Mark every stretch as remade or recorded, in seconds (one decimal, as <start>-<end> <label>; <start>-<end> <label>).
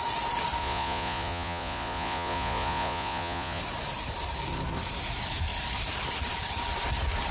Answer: 0.0-0.6 recorded; 0.6-3.6 remade; 3.6-7.3 recorded